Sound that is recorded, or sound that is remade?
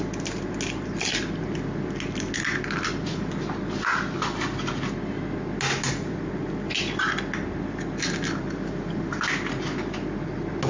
recorded